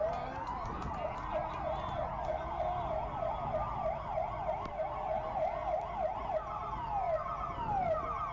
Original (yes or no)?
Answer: yes